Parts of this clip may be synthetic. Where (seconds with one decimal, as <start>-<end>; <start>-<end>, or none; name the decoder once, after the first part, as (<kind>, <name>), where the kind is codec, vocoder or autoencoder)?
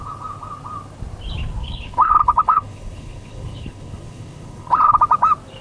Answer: 1.6-5.0 (codec, HILCodec)